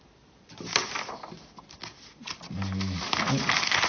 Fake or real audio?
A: real